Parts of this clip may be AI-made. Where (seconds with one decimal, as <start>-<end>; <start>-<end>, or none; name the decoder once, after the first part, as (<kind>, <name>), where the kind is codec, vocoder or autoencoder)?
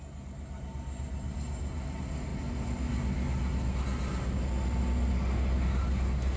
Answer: 0.0-2.3 (vocoder, BigVGAN v2)